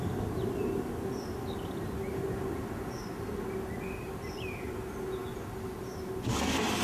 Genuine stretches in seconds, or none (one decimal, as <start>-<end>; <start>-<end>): 0.0-6.8